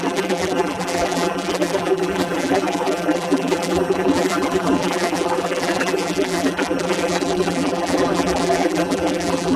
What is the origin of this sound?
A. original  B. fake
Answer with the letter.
B